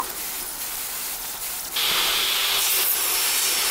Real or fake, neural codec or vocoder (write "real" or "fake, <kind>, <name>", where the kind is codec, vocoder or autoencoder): real